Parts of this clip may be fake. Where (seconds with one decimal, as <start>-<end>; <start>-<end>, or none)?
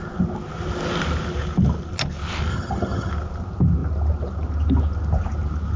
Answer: 2.5-3.1